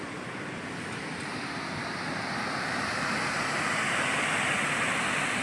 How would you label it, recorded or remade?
recorded